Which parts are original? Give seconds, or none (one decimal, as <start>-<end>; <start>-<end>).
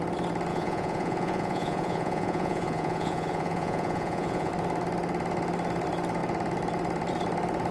0.0-0.5; 4.5-7.7